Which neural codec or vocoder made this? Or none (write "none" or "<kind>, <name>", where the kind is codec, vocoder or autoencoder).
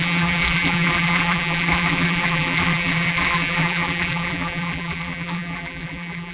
vocoder, BigVGAN v2